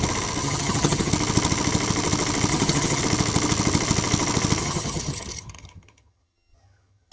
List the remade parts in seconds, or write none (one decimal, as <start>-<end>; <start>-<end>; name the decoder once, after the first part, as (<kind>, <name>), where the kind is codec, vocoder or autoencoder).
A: 0.4-1.1 (vocoder, HiFi-GAN); 2.5-3.0; 4.6-7.1